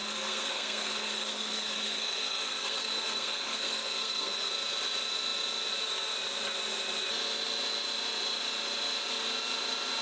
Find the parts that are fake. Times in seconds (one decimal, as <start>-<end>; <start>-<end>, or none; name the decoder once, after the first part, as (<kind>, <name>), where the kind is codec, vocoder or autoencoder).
0.0-4.5 (codec, SNAC)